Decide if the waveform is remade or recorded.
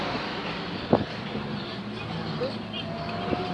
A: recorded